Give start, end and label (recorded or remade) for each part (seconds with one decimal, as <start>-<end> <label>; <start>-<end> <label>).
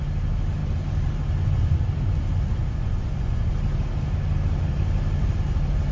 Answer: 0.0-2.6 recorded; 2.6-3.5 remade; 3.5-5.9 recorded